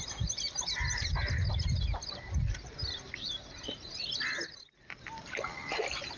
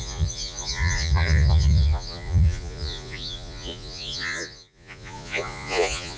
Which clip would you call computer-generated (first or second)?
second